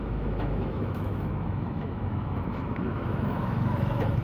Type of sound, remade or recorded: remade